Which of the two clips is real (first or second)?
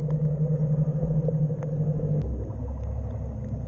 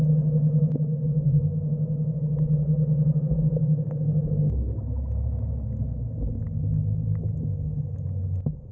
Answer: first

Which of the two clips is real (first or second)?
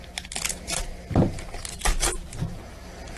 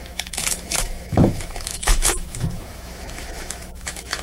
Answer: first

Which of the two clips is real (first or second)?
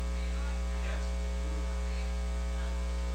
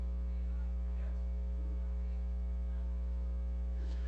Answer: first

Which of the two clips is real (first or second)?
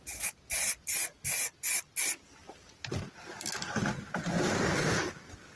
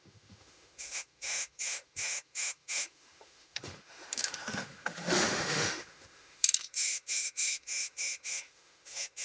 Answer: first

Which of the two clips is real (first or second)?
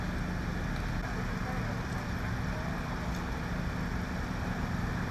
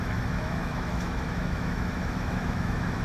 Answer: first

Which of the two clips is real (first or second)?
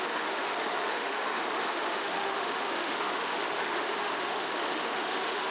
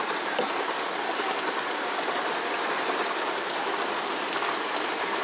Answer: second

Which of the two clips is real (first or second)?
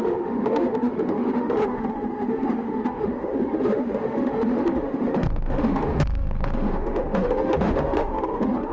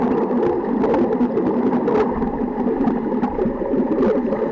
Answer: second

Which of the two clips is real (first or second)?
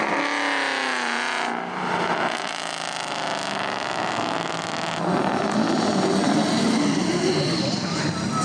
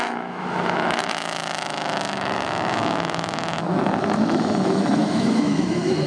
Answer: first